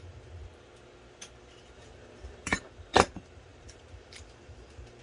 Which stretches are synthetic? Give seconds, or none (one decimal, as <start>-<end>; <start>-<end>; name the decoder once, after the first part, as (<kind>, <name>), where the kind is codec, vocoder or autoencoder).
0.0-0.4 (vocoder, BigVGAN v2); 1.6-5.0